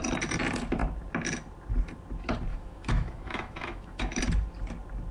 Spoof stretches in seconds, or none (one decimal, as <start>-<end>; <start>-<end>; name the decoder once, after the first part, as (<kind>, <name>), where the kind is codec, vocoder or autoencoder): 2.5-4.2 (autoencoder, DAC-VAE)